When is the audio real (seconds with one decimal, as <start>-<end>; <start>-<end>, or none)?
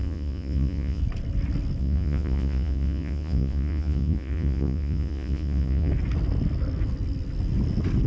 1.0-1.8; 5.9-8.1